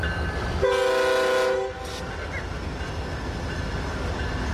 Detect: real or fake real